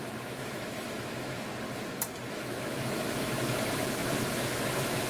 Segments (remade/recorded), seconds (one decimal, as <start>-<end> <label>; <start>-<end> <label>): 0.0-1.5 remade; 1.5-2.3 recorded; 2.3-5.1 remade